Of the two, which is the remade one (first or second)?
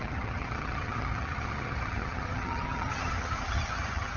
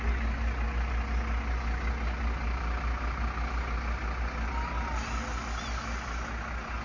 first